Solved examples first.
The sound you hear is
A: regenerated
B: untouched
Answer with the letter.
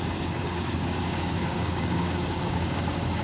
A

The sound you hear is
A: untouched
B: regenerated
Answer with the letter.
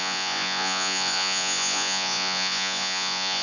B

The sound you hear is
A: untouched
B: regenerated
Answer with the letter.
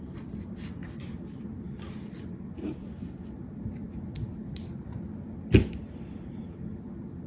A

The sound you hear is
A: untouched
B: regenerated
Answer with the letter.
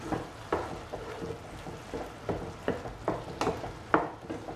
A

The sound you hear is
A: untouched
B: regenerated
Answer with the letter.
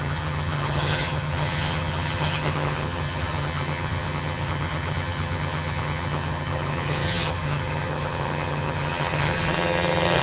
B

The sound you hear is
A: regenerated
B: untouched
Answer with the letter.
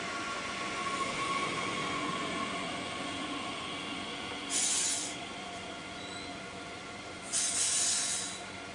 A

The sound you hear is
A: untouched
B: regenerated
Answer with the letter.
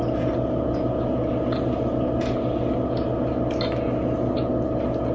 A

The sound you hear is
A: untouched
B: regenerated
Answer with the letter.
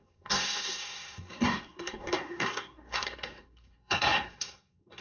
B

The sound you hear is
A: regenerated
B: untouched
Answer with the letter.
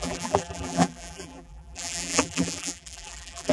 A